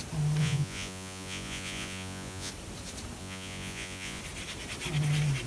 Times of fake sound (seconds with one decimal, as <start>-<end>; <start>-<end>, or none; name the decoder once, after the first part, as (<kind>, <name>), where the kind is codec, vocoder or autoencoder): 0.4-2.5 (vocoder, Vocos); 3.2-4.2